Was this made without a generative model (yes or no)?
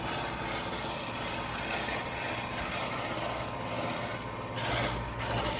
yes